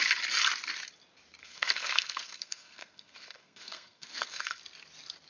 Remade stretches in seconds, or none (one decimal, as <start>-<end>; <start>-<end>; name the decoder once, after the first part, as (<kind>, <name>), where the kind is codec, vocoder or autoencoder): 1.4-4.6 (codec, SNAC)